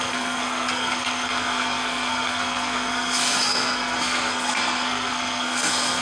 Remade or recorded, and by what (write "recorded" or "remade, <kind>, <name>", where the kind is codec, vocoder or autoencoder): remade, codec, SNAC